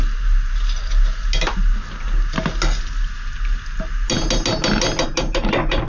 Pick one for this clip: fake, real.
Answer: real